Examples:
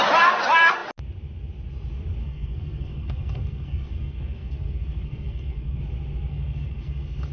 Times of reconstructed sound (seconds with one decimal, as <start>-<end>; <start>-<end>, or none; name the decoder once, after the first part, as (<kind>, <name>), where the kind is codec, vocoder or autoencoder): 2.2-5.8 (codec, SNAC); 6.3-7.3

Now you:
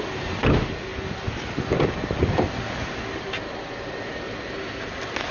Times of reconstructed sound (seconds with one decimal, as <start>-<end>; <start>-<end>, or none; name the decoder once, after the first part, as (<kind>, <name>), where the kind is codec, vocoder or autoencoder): none

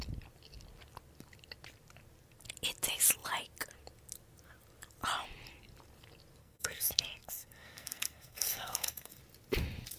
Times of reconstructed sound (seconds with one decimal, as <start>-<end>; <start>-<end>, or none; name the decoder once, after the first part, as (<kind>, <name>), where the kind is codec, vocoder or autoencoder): 6.4-9.2 (codec, SNAC)